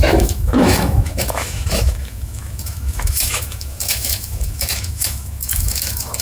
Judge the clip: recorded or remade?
remade